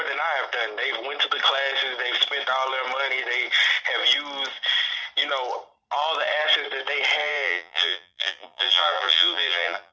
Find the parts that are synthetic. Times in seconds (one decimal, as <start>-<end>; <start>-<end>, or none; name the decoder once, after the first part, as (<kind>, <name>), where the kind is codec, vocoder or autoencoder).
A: 7.2-9.9 (vocoder, BigVGAN v2)